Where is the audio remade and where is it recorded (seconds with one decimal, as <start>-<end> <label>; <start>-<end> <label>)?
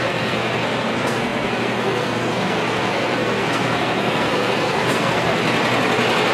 0.0-5.4 remade; 5.4-6.3 recorded